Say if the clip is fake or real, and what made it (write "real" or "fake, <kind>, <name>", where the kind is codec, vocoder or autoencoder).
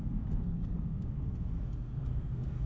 fake, codec, SNAC